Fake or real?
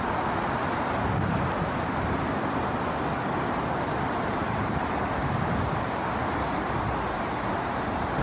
real